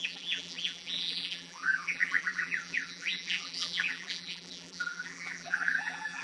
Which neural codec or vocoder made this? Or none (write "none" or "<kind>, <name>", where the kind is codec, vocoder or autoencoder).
vocoder, BigVGAN v2